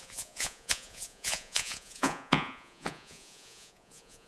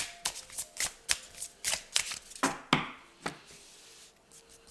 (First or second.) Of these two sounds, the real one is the second